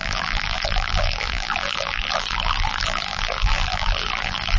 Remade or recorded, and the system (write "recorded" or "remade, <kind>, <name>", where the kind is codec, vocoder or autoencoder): remade, vocoder, BigVGAN v2